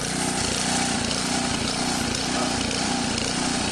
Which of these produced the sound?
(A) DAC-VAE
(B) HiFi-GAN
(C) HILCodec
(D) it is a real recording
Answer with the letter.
D